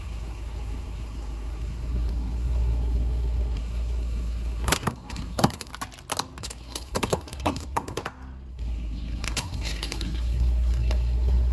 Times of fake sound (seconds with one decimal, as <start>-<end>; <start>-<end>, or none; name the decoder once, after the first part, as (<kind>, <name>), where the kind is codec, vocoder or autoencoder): 0.0-5.7 (codec, SNAC); 6.4-8.0; 8.5-11.5

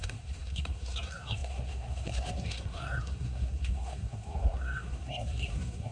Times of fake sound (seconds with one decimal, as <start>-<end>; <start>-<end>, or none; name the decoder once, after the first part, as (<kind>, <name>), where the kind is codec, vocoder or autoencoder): 0.0-5.9 (codec, SNAC)

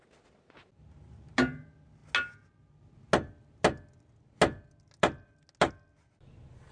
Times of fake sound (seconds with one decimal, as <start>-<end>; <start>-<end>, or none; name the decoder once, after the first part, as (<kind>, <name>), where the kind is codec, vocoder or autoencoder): none

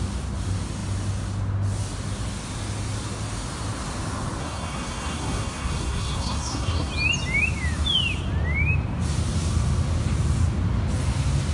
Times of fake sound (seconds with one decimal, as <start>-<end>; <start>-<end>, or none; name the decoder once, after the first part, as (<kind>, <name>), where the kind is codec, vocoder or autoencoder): 4.4-6.9 (codec, SNAC)

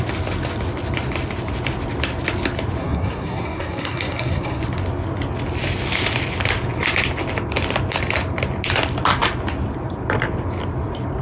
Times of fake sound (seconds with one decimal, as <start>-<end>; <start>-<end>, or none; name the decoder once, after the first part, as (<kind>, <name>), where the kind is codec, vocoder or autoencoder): 2.8-4.6 (codec, SNAC)

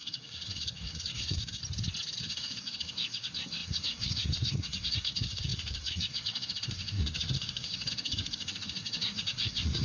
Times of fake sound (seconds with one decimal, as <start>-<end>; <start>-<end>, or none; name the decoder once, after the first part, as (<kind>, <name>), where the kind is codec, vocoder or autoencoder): 0.0-1.6 (codec, SNAC); 2.2-9.8

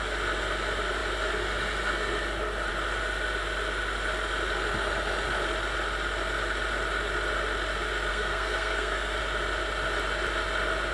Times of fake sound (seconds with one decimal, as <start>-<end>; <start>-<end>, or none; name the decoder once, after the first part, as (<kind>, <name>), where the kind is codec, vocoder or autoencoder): 8.1-9.2 (codec, SNAC)